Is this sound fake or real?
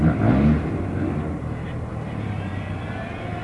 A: real